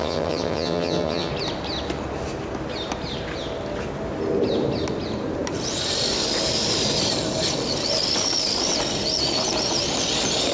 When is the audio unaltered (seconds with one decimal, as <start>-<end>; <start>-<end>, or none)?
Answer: 1.3-10.5